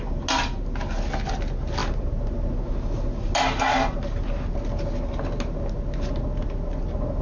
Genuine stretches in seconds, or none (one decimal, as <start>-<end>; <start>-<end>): 0.0-7.2